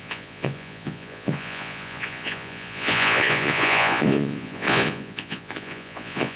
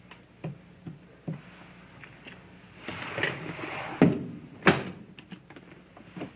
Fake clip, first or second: first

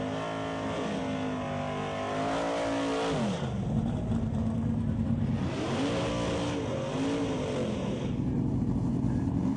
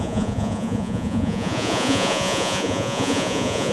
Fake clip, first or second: second